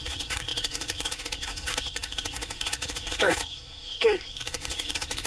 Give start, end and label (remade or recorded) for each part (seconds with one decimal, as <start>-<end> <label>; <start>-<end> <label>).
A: 0.0-5.3 remade